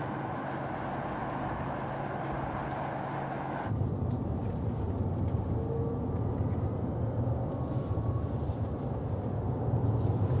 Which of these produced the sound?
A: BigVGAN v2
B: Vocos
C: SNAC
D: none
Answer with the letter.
D